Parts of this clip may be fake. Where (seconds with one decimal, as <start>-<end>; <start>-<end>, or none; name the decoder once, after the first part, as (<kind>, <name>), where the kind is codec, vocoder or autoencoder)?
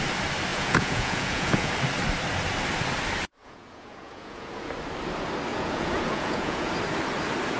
0.5-1.7 (vocoder, Vocos); 3.4-4.7; 5.5-6.7